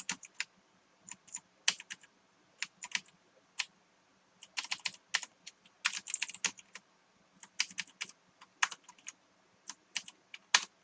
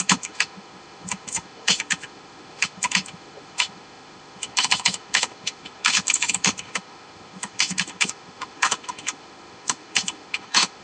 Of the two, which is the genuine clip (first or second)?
first